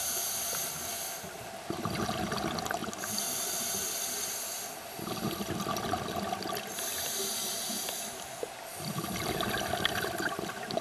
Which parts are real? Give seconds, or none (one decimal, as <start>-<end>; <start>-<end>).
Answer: 0.0-10.8